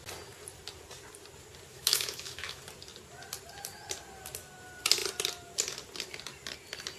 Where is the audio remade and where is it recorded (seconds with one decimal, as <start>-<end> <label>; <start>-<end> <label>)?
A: 0.0-1.7 recorded; 1.7-2.6 remade; 2.6-7.0 recorded